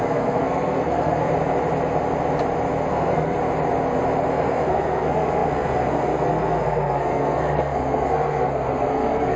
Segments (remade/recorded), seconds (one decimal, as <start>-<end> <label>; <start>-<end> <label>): 0.0-1.3 remade; 1.3-2.9 recorded; 2.9-3.4 remade; 3.4-4.3 recorded; 4.3-9.4 remade